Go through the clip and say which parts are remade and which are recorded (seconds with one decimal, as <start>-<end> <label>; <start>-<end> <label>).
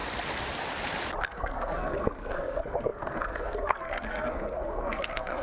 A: 0.0-1.2 recorded; 1.2-5.4 remade